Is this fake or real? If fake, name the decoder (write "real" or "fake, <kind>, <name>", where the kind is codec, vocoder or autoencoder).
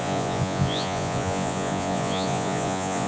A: fake, vocoder, Vocos